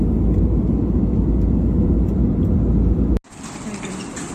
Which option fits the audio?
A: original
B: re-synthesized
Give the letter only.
A